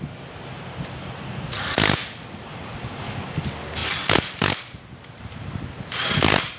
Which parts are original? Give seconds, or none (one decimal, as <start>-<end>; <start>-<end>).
0.0-6.6